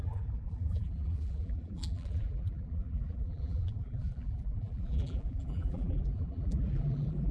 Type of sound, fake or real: fake